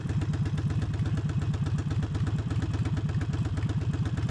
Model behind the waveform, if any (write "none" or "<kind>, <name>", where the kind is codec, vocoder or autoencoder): none